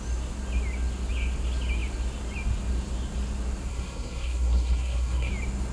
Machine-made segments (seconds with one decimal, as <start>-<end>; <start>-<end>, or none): 3.7-5.3